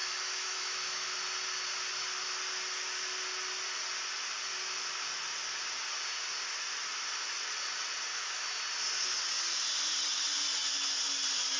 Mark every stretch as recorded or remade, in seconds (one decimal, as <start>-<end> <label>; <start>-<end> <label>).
0.0-1.1 remade; 1.1-8.1 recorded; 8.1-8.6 remade; 8.6-11.6 recorded